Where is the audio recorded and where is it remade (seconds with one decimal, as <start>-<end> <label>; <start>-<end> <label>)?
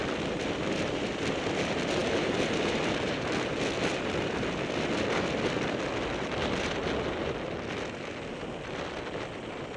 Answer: 0.0-9.8 recorded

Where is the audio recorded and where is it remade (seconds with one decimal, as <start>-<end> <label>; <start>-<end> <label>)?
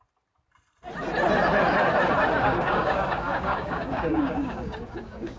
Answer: 0.0-2.4 recorded; 2.4-5.4 remade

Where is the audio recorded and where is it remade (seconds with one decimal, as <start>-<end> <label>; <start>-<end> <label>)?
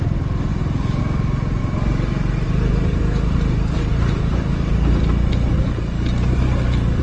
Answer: 0.0-0.5 recorded; 0.5-1.0 remade; 1.0-1.6 recorded; 1.6-5.0 remade; 5.0-7.0 recorded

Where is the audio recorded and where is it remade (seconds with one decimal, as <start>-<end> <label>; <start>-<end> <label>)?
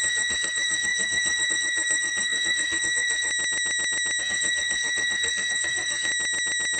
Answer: 0.0-3.3 remade; 3.3-4.2 recorded; 4.2-6.1 remade; 6.1-6.8 recorded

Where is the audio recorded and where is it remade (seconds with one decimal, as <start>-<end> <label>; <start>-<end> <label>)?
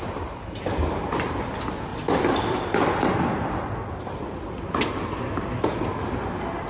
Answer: 0.0-6.7 recorded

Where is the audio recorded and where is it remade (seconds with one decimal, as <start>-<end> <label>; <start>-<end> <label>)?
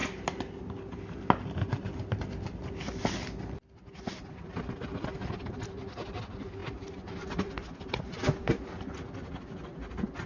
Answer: 0.0-10.3 recorded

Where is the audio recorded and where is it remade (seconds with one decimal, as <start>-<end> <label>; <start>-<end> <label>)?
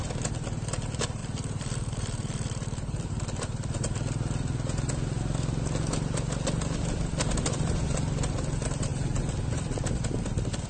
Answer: 0.0-1.2 recorded; 1.2-3.1 remade; 3.1-10.7 recorded